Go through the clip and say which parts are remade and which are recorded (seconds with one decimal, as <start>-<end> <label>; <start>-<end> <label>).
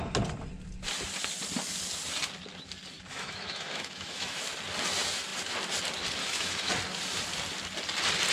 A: 0.0-3.1 recorded; 3.1-4.4 remade; 4.4-6.2 recorded; 6.2-6.7 remade; 6.7-8.3 recorded